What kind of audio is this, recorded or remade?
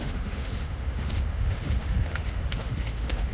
remade